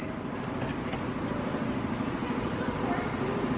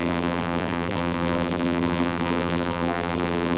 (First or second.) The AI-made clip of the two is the second